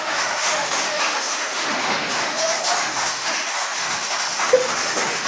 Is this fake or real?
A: fake